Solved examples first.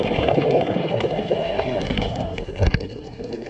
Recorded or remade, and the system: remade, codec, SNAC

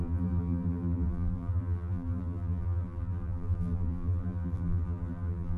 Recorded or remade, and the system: remade, vocoder, BigVGAN v2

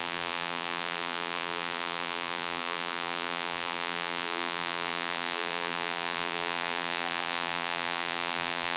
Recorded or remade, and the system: remade, vocoder, BigVGAN v2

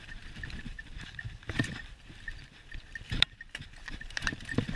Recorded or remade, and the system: remade, vocoder, BigVGAN v2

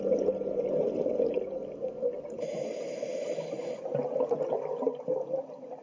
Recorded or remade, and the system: recorded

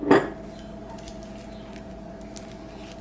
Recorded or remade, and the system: recorded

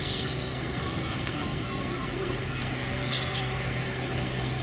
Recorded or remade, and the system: remade, codec, SNAC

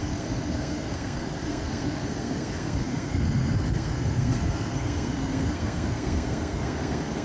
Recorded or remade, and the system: remade, codec, SNAC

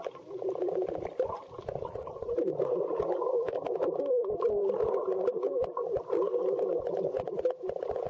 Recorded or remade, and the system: recorded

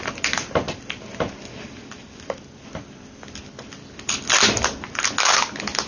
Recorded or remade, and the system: recorded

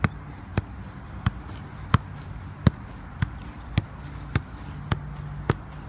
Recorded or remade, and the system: recorded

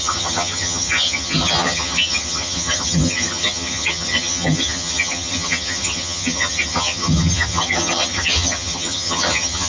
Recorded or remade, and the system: remade, vocoder, HiFi-GAN